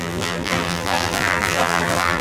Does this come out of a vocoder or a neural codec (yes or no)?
yes